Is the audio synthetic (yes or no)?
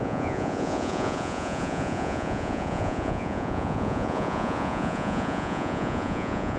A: yes